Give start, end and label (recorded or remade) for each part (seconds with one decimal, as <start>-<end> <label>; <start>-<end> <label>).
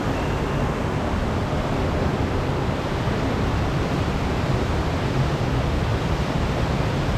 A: 0.0-1.2 recorded; 1.2-5.5 remade; 5.5-5.9 recorded; 5.9-6.8 remade; 6.8-7.2 recorded